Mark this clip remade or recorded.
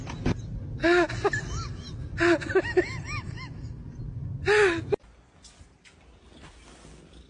recorded